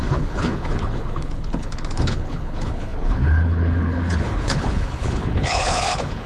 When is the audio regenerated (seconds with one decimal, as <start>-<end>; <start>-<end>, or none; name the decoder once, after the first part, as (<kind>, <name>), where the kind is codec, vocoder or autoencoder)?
0.0-6.3 (codec, HILCodec)